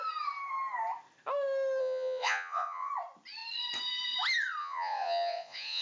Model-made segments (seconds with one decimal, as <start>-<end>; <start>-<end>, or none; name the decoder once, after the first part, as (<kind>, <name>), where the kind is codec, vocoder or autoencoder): 1.8-2.9 (vocoder, Vocos); 4.6-5.8